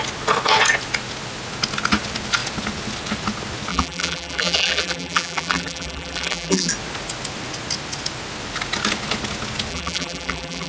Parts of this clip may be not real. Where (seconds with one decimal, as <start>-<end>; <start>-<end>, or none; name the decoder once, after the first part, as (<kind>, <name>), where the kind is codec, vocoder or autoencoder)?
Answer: 3.7-6.7 (vocoder, BigVGAN v2); 9.7-10.7